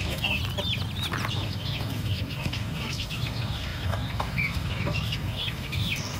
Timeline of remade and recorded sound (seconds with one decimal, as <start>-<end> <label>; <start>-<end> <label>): 0.0-0.4 remade; 0.4-1.3 recorded; 1.3-6.2 remade